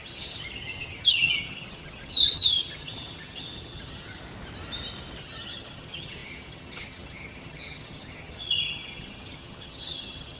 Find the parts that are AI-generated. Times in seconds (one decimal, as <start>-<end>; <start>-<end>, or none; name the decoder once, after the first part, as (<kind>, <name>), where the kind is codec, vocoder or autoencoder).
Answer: 0.0-4.2 (vocoder, HiFi-GAN); 5.2-10.4